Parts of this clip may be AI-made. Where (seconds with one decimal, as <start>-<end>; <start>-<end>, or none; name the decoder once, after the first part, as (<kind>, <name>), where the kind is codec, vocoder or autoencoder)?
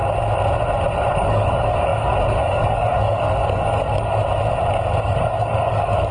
1.1-4.2 (codec, DAC); 5.0-6.1